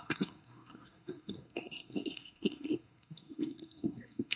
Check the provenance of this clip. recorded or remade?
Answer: remade